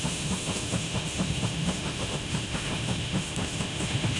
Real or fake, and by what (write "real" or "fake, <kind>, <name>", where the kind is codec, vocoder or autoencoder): fake, autoencoder, DAC-VAE